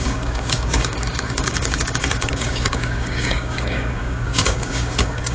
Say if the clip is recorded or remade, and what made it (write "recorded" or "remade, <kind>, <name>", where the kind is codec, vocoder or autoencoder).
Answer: remade, codec, DAC